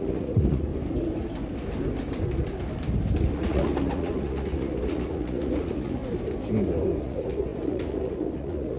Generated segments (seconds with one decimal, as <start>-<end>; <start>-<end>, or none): 0.0-0.7; 3.3-6.0; 7.0-8.8